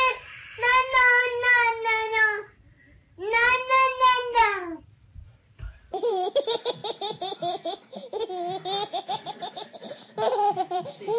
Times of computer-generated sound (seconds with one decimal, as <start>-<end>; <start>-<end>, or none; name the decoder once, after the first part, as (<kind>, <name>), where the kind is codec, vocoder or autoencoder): 0.0-0.7 (vocoder, BigVGAN v2); 4.8-6.8; 9.5-11.2